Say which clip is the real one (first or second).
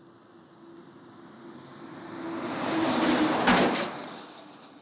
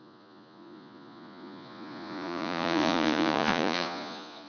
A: first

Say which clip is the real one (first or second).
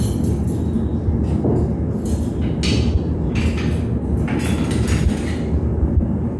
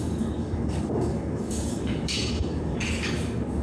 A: first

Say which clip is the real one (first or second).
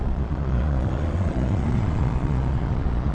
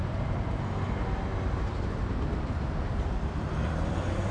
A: second